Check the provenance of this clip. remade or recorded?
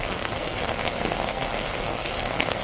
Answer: remade